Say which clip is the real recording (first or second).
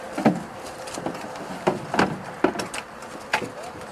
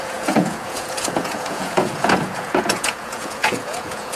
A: first